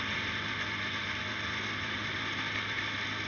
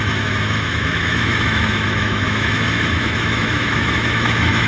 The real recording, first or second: first